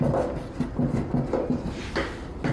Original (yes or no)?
yes